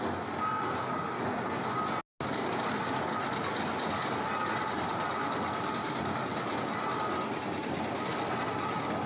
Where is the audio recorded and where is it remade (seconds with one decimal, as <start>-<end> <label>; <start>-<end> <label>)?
0.0-9.1 recorded